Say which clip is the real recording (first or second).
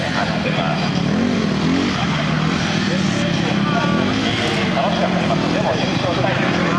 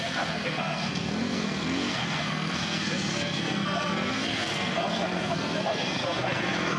first